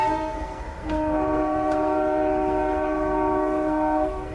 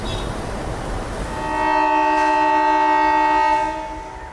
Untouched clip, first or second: second